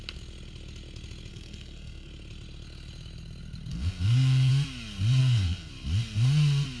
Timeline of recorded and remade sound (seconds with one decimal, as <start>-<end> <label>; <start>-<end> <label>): 0.0-1.3 recorded; 1.3-2.1 remade; 2.1-3.7 recorded; 3.7-4.5 remade; 4.5-5.2 recorded; 5.2-5.7 remade; 5.7-6.8 recorded